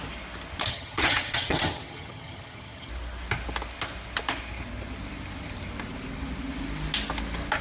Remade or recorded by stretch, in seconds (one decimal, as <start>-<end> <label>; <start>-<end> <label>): 0.0-0.7 recorded; 0.7-2.9 remade; 2.9-7.6 recorded